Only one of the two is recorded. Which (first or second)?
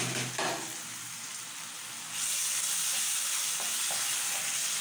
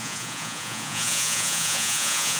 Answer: first